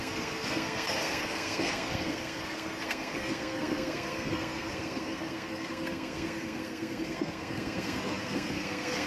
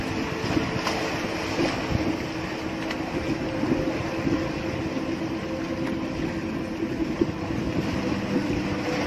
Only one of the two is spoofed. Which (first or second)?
first